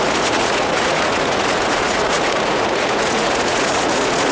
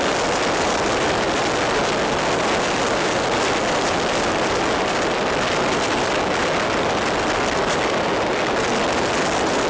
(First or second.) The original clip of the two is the second